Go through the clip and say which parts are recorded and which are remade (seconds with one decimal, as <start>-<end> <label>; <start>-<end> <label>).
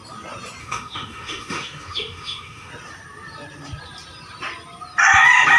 0.0-0.6 recorded; 0.6-2.7 remade; 2.7-5.6 recorded